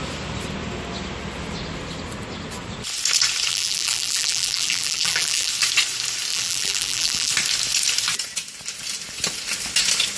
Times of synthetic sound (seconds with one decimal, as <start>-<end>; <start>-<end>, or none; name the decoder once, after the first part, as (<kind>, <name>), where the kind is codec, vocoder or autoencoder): 3.5-5.5 (vocoder, BigVGAN v2); 6.3-7.3

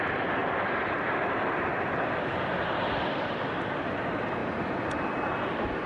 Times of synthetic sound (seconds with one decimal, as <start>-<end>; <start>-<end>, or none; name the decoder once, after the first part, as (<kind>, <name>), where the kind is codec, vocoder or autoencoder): 0.4-3.2 (vocoder, BigVGAN v2)

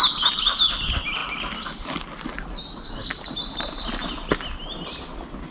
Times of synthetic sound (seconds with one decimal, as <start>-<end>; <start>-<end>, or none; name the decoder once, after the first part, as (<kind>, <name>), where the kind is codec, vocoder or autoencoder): 3.0-4.2 (vocoder, BigVGAN v2)

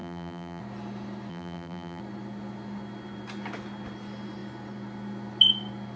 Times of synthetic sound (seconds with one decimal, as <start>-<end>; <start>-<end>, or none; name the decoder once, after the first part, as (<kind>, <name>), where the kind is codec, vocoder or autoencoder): 0.0-0.6 (vocoder, BigVGAN v2); 1.3-2.0

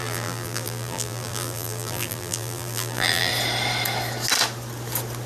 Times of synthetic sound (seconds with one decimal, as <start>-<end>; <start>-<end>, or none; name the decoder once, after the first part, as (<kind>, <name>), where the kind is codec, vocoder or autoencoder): 0.0-3.3 (vocoder, BigVGAN v2)